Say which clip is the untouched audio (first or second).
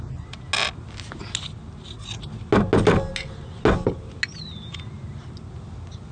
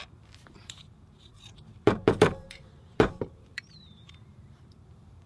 first